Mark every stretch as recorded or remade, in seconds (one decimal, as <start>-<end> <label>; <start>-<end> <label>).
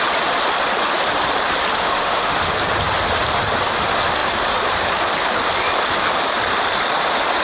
0.0-1.7 recorded; 1.7-2.5 remade; 2.5-7.4 recorded